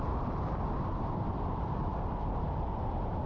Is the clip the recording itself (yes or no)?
yes